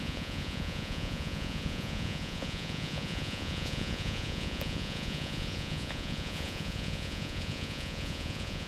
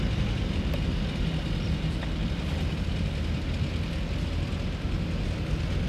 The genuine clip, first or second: second